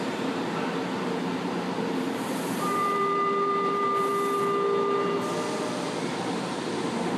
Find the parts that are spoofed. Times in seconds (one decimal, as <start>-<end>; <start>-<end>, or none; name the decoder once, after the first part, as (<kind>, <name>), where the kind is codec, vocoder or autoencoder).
0.0-4.1 (vocoder, BigVGAN v2); 6.3-7.2